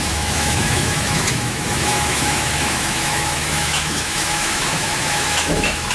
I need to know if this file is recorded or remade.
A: remade